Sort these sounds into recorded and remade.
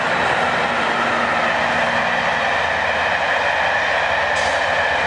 recorded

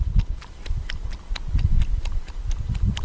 recorded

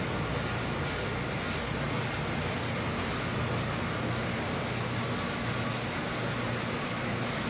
recorded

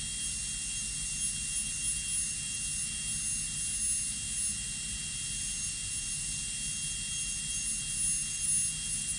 recorded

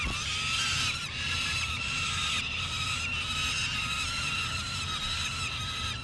recorded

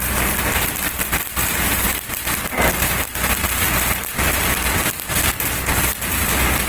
recorded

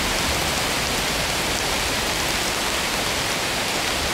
recorded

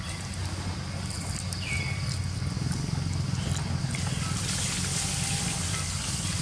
recorded